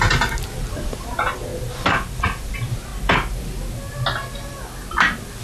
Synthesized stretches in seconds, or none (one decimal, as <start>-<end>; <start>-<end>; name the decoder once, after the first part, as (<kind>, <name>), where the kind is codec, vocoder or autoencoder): 0.0-2.9 (vocoder, BigVGAN v2)